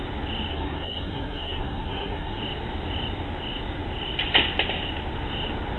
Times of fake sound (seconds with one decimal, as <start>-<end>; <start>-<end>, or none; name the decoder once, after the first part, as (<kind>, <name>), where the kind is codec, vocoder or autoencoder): 0.5-2.4 (codec, SNAC)